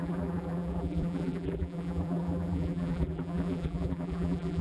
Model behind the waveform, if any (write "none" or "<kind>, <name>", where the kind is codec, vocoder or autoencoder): vocoder, BigVGAN v2